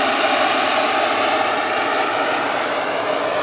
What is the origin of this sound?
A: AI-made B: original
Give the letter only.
B